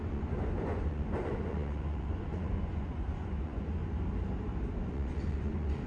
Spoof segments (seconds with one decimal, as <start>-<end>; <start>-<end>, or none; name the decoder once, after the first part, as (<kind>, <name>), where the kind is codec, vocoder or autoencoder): 0.0-3.8 (vocoder, Vocos); 4.7-5.9